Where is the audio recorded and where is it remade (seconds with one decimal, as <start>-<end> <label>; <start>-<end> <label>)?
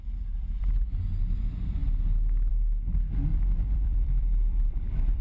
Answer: 0.0-3.3 recorded; 3.3-5.2 remade